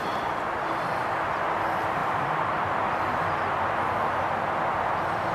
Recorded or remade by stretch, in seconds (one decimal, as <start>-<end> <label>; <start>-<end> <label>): 0.0-5.3 recorded